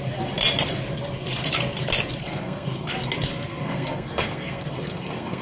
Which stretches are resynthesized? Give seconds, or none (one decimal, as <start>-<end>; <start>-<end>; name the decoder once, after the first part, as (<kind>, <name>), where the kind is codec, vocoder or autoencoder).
2.2-2.9 (codec, SNAC); 3.3-5.4